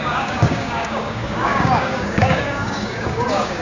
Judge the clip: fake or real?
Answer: fake